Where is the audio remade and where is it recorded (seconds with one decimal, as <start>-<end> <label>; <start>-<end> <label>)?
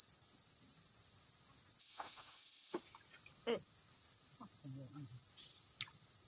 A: 0.0-1.8 recorded; 1.8-2.8 remade; 2.8-6.3 recorded